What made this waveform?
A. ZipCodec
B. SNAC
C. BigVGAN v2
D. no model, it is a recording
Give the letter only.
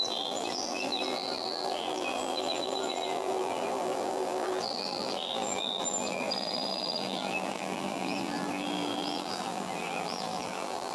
C